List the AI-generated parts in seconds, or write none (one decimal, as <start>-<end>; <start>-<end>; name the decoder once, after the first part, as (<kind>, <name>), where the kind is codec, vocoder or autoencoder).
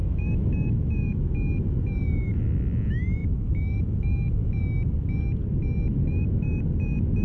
0.0-2.4 (autoencoder, DAC-VAE); 3.2-4.5